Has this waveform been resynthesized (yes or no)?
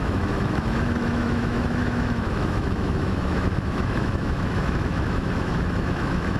yes